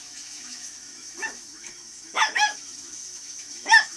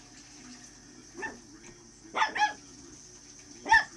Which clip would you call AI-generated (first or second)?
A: first